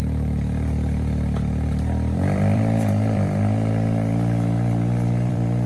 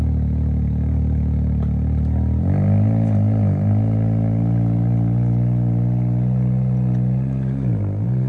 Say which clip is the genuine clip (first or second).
second